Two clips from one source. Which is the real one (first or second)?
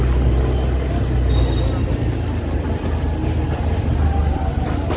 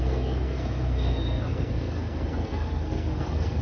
first